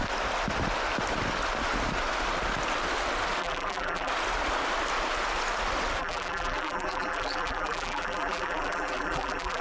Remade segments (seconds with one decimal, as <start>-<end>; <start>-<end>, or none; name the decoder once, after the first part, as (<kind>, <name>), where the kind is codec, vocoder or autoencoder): 3.4-4.1 (vocoder, BigVGAN v2); 6.0-9.6